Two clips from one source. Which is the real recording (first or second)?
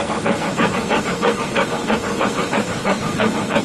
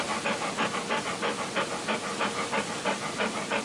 second